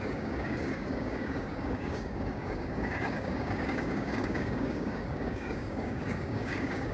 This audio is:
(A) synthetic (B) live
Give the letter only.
A